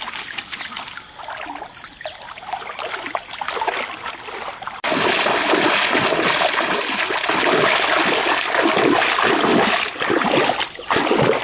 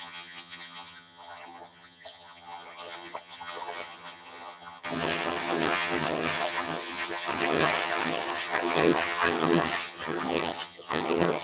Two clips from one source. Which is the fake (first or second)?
second